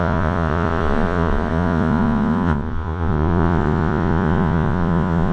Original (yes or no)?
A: no